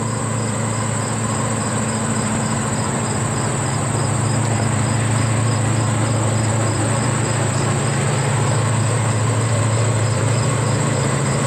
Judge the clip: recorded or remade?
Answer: remade